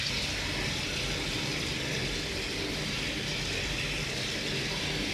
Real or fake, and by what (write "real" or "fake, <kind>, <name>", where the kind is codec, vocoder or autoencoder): real